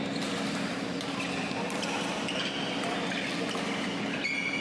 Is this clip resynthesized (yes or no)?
no